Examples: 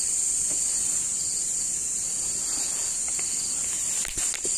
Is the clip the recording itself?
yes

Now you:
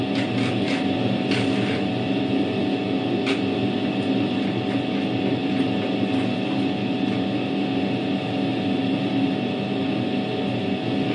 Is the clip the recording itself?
yes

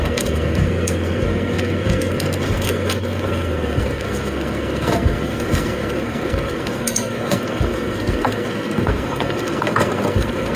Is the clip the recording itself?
no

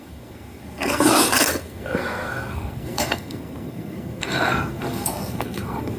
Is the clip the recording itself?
no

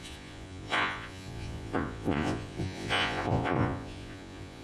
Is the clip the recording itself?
no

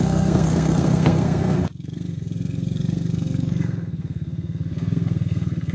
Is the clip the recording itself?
no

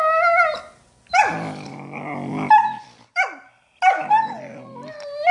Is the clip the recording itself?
yes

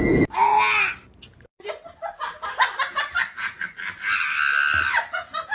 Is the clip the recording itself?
yes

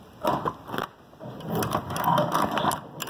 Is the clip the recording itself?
yes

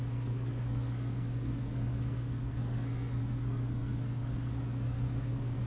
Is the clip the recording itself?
no